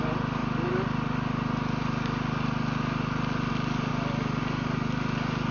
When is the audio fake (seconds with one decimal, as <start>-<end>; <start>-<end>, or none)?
none